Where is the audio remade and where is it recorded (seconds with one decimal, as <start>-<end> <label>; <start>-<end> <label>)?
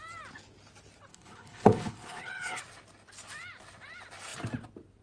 0.0-1.1 recorded; 1.1-2.6 remade; 2.6-5.0 recorded